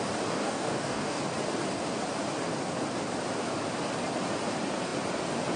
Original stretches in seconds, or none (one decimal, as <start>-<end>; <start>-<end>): 0.0-0.4; 1.2-5.6